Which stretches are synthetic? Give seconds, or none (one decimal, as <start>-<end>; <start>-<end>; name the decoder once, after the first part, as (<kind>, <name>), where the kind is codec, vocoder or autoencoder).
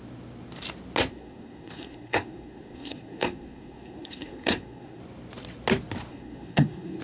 1.1-5.0 (codec, SNAC); 6.1-7.0